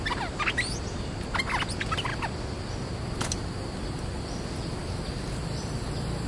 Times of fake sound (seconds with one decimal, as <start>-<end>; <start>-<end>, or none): none